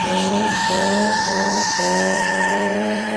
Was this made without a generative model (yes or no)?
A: no